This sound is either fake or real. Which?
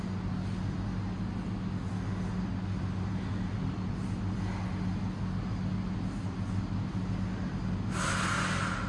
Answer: real